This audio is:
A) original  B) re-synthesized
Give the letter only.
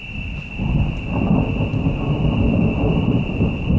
A